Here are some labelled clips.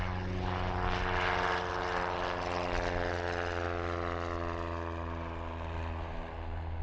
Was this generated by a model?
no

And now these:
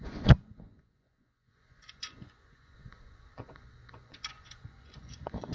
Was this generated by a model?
yes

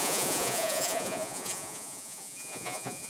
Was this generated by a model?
yes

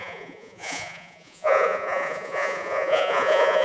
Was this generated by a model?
yes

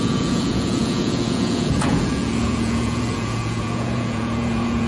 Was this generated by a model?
yes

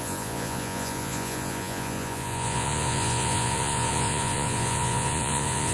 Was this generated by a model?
yes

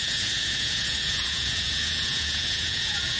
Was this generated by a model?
yes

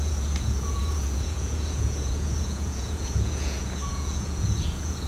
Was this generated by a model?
yes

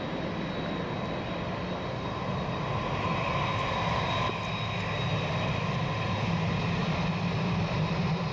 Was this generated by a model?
no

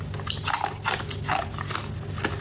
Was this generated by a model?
no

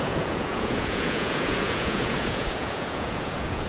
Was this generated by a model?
yes